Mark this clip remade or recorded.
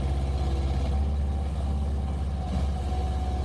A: recorded